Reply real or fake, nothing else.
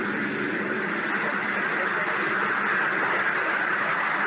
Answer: real